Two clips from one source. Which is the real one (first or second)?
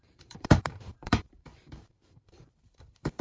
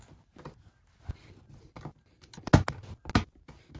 second